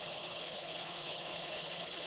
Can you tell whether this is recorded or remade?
remade